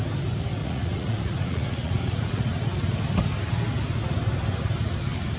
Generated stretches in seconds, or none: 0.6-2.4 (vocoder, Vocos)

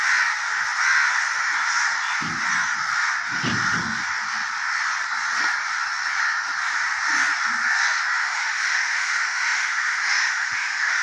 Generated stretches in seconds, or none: 8.2-11.0 (autoencoder, DAC-VAE)

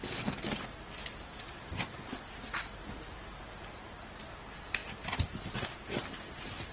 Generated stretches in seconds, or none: 2.8-3.4 (vocoder, BigVGAN v2); 4.8-6.1